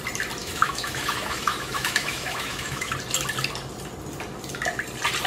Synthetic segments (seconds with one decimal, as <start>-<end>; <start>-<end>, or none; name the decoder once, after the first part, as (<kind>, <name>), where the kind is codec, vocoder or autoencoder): 0.4-2.9 (autoencoder, DAC-VAE)

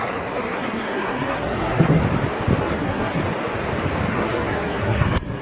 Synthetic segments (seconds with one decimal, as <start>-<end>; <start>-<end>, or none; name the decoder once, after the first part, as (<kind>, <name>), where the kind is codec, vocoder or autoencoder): 0.0-2.0 (codec, SNAC); 2.6-3.2; 4.1-5.4

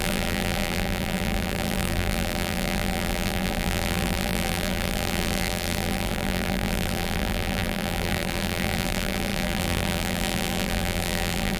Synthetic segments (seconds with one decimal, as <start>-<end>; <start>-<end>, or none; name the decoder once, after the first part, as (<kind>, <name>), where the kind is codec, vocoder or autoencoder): 0.0-11.6 (vocoder, BigVGAN v2)

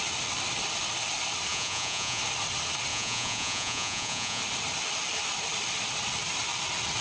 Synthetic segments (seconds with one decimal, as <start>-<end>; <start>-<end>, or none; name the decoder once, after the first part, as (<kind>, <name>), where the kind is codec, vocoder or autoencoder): 1.5-2.2 (vocoder, Vocos); 2.9-4.4

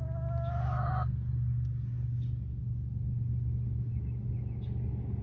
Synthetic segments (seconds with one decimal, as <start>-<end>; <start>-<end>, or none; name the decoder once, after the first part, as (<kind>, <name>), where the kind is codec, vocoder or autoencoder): none